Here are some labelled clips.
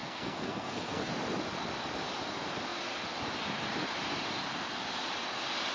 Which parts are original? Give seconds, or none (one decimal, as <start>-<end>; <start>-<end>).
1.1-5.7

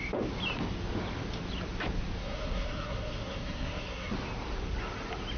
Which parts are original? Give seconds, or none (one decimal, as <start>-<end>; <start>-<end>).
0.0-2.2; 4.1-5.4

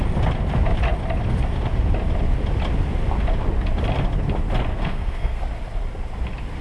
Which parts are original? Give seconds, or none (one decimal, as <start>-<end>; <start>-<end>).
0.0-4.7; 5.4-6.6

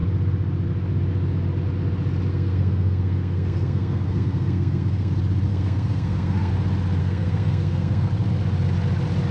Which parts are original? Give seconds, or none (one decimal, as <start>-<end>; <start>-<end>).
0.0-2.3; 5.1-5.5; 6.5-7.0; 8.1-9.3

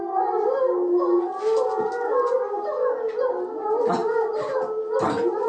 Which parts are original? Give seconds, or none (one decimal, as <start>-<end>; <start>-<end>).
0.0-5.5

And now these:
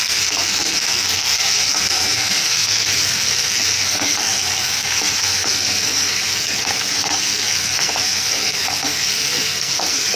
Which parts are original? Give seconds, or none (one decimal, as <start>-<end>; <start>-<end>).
none